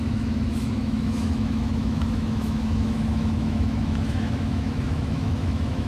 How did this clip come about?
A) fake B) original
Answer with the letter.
A